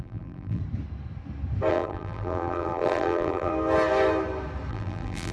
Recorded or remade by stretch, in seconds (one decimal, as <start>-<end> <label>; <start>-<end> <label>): 0.0-0.6 remade; 0.6-1.7 recorded; 1.7-3.5 remade; 3.5-4.7 recorded; 4.7-5.3 remade